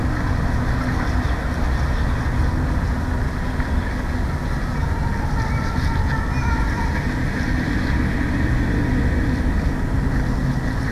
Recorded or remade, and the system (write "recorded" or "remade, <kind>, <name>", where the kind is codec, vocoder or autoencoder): recorded